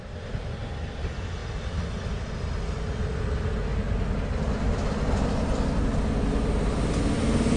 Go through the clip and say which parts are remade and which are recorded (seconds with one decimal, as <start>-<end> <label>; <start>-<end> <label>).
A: 0.0-7.6 recorded